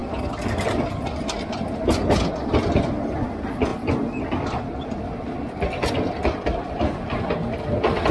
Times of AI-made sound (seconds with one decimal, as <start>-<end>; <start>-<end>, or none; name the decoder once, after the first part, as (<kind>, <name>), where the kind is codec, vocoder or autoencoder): none